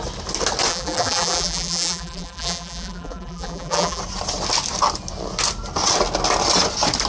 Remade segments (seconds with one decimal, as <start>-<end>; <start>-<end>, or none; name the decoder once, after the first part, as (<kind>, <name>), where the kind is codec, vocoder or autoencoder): 0.7-4.0 (vocoder, BigVGAN v2)